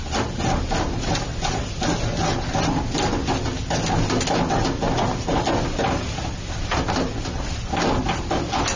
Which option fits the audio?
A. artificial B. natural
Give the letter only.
B